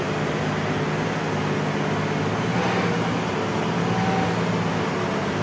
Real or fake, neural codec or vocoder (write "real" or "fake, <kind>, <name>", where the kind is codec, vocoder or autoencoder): real